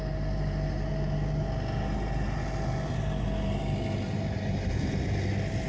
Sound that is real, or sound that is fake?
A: real